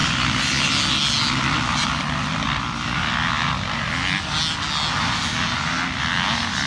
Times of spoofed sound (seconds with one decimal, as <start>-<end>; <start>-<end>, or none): none